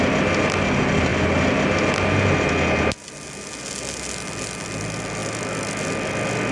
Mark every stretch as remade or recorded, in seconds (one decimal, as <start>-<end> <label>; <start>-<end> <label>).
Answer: 0.0-6.5 recorded